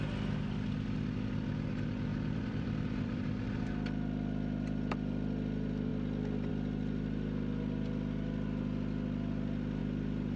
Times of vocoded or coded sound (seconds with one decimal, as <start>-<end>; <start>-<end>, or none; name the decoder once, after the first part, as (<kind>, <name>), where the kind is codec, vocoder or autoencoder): 2.1-3.2 (vocoder, BigVGAN v2)